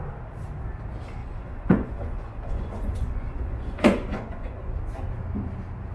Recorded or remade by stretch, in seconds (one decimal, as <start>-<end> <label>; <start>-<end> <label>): 0.0-1.2 recorded; 1.2-4.7 remade; 4.7-5.9 recorded